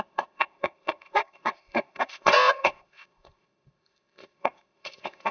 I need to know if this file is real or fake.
fake